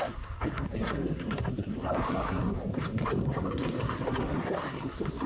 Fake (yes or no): yes